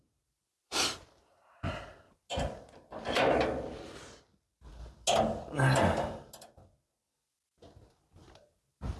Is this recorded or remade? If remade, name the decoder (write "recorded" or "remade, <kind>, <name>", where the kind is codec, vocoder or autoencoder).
recorded